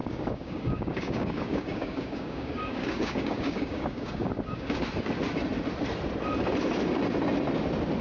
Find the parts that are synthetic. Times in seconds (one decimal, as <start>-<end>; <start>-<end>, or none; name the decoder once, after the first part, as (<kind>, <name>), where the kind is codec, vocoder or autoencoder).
0.0-4.8 (codec, DAC)